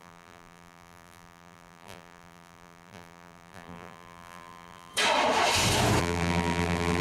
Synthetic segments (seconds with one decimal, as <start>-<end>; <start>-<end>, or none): 0.0-4.9; 6.0-7.0